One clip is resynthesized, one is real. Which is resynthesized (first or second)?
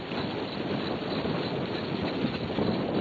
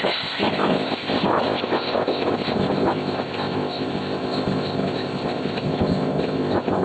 second